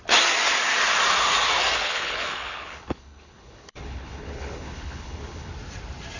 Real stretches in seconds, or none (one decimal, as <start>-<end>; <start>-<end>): 0.0-1.8; 5.5-6.2